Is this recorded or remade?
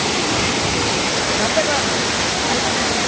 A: recorded